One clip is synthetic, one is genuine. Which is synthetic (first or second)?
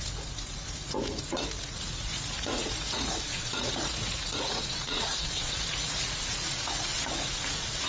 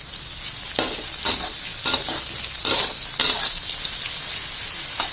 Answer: first